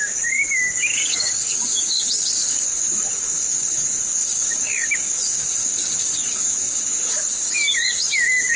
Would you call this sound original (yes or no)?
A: no